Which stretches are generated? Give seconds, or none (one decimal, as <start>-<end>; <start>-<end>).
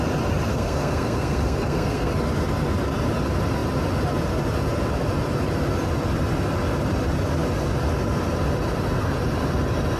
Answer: 0.5-2.1